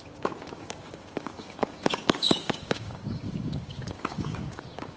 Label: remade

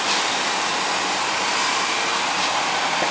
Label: recorded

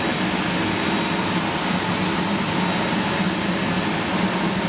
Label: recorded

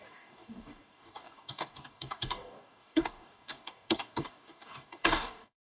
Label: remade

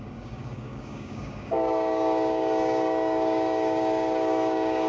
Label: remade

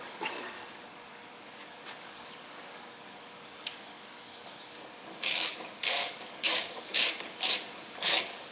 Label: remade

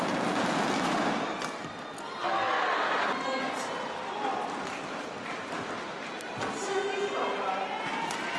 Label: recorded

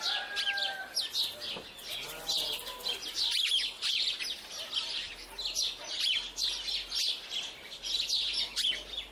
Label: recorded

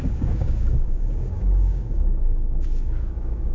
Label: remade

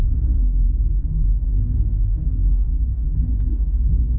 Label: remade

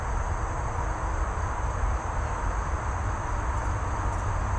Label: recorded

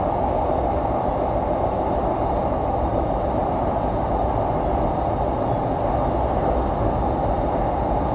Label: recorded